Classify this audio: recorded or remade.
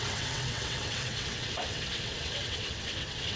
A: remade